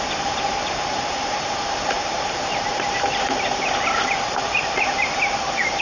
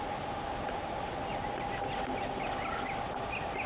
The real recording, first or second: second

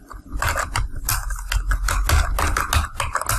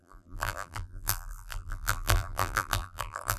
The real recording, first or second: first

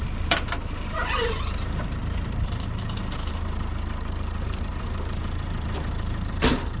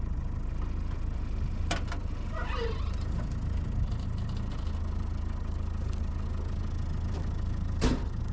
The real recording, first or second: second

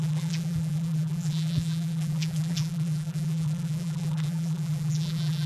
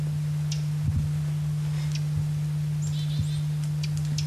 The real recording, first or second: second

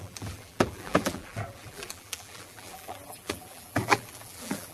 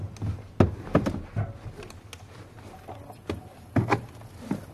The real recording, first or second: second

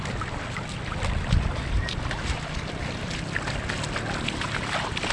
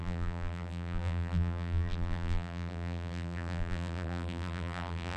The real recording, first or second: first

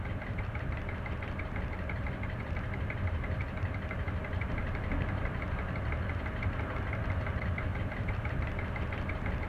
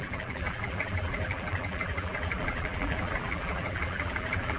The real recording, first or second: first